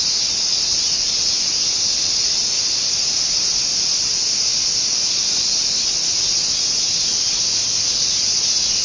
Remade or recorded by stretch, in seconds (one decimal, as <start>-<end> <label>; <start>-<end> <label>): 0.0-8.8 recorded